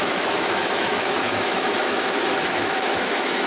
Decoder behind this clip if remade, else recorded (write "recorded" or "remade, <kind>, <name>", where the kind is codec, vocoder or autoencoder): remade, autoencoder, DAC-VAE